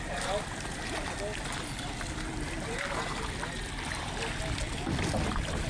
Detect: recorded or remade recorded